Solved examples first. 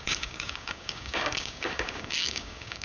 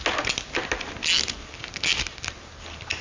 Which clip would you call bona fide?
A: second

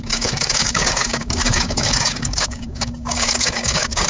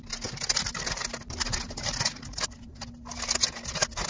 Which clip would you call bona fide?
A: second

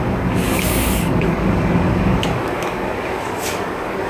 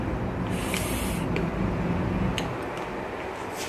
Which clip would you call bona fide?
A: second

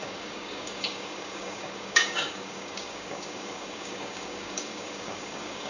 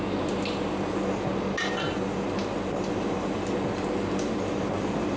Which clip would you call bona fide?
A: second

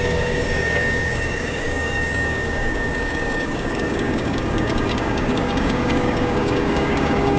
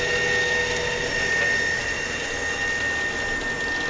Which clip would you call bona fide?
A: second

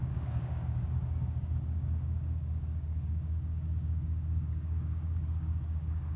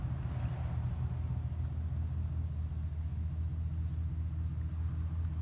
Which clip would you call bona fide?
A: second